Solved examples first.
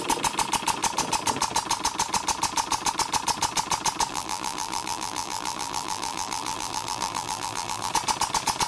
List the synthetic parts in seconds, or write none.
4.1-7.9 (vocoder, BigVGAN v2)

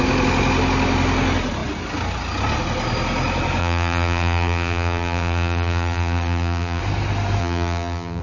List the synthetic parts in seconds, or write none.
3.6-6.8 (vocoder, BigVGAN v2); 7.4-8.2

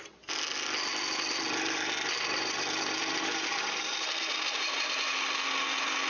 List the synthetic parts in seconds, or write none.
0.9-4.6 (vocoder, BigVGAN v2)

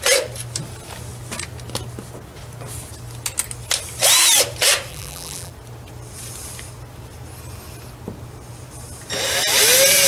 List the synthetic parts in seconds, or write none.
4.9-5.5 (vocoder, BigVGAN v2)

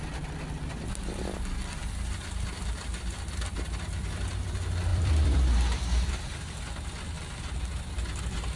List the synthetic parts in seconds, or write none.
1.8-3.5 (vocoder, BigVGAN v2); 4.9-6.6